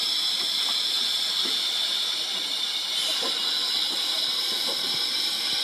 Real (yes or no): yes